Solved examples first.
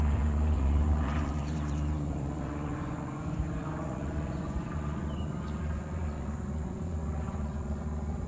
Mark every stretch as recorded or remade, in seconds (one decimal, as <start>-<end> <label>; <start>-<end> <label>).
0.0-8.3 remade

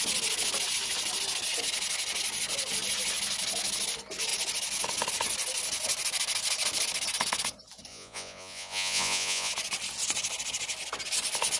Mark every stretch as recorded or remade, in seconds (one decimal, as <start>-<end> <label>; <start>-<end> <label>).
0.0-7.9 recorded; 7.9-9.5 remade; 9.5-11.6 recorded

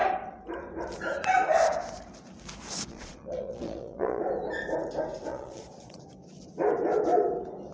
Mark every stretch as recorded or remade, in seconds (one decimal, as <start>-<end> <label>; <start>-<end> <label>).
0.0-2.9 recorded; 2.9-4.2 remade; 4.2-5.3 recorded; 5.3-6.0 remade; 6.0-7.7 recorded

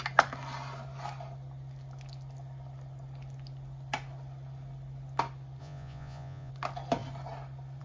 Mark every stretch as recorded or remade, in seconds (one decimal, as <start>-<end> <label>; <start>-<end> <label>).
0.0-5.6 recorded; 5.6-6.5 remade; 6.5-7.8 recorded

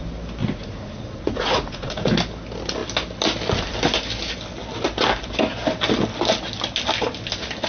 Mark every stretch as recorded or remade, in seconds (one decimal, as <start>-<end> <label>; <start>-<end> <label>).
0.0-0.4 recorded; 0.4-2.1 remade; 2.1-7.7 recorded

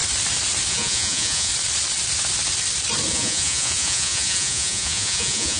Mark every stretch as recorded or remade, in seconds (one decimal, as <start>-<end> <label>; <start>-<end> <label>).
0.0-0.7 recorded; 0.7-1.5 remade; 1.5-3.1 recorded; 3.1-5.6 remade